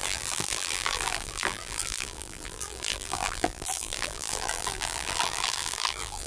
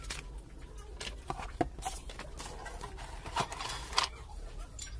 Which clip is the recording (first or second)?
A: second